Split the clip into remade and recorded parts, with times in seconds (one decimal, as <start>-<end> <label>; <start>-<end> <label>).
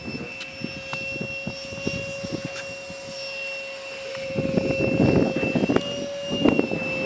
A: 0.0-7.1 recorded